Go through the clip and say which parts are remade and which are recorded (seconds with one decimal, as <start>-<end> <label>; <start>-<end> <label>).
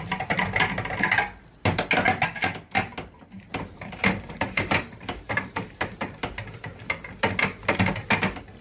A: 0.0-3.5 recorded; 3.5-6.0 remade; 6.0-8.6 recorded